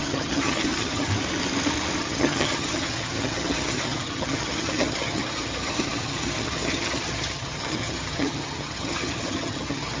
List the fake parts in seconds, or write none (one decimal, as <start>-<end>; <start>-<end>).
0.0-1.1; 2.0-10.0